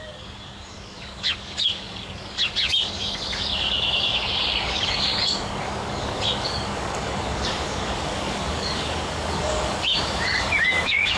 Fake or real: fake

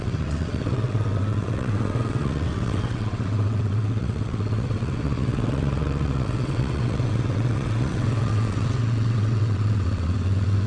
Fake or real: fake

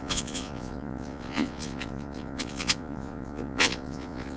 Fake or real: fake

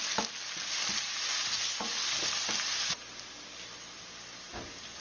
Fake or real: real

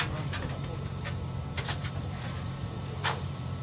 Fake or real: fake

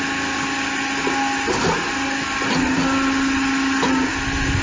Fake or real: real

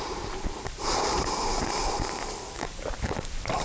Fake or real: fake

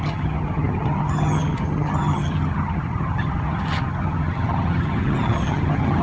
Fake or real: fake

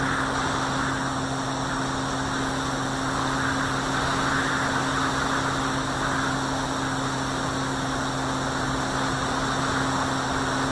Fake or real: real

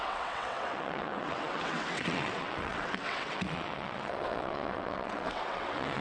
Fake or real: fake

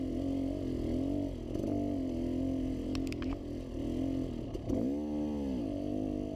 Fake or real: real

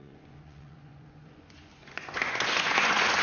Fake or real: fake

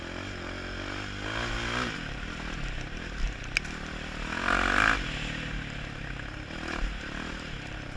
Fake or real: real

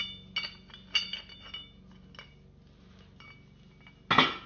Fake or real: real